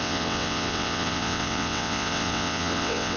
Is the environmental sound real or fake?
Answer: fake